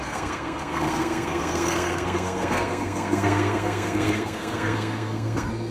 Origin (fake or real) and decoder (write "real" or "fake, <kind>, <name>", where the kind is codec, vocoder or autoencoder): fake, codec, SNAC